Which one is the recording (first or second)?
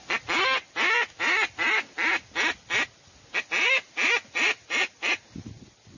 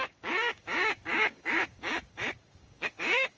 first